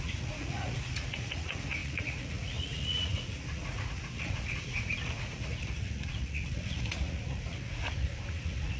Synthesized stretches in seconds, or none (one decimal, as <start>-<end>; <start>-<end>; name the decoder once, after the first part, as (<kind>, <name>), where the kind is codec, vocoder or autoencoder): 0.0-8.8 (vocoder, Vocos)